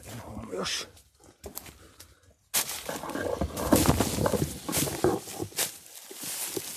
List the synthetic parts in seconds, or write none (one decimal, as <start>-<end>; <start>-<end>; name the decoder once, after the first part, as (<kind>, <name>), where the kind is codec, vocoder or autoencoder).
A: none